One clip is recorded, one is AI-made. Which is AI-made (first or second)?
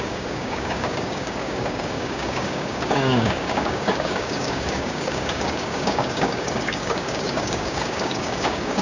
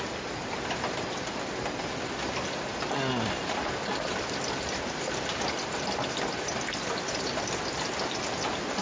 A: first